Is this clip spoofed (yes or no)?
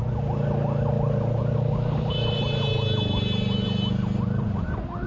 no